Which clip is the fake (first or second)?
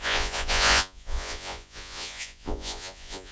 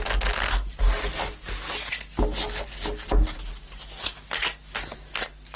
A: first